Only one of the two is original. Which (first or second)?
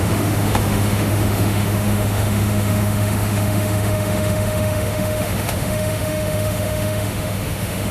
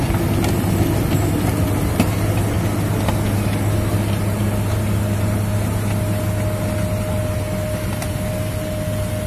second